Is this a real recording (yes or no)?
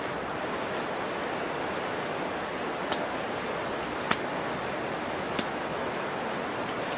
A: yes